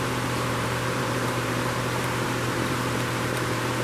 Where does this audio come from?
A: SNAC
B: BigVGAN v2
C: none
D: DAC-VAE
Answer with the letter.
B